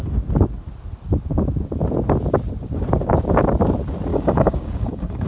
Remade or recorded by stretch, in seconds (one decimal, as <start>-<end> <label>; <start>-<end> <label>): 0.0-4.1 recorded; 4.1-5.3 remade